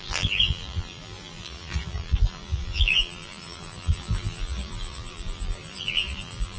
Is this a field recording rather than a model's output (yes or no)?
no